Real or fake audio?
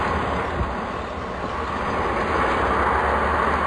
real